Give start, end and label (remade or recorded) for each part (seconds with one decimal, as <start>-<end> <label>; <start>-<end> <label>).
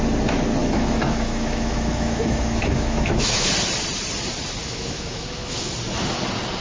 0.0-0.6 recorded; 0.6-3.5 remade; 3.5-4.6 recorded; 4.6-5.7 remade; 5.7-6.6 recorded